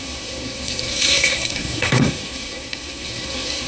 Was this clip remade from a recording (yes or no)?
yes